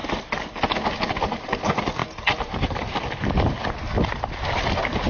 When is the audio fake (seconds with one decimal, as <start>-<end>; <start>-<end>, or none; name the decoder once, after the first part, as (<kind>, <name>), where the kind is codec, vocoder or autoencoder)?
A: none